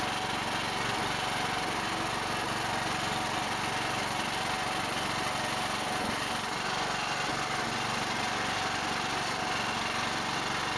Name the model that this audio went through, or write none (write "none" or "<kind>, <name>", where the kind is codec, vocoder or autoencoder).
none